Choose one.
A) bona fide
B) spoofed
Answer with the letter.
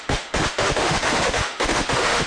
B